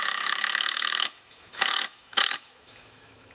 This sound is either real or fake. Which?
fake